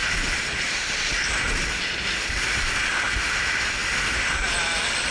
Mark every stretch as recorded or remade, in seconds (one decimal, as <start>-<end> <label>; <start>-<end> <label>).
0.0-5.1 recorded